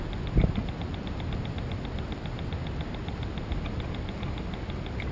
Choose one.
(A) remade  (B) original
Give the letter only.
B